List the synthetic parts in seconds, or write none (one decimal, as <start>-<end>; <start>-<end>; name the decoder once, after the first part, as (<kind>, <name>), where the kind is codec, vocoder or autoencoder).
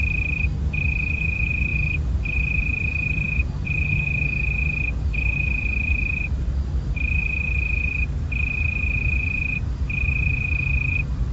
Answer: 0.0-1.7 (vocoder, BigVGAN v2); 2.6-11.3